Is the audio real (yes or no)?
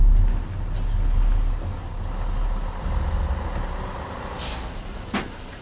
yes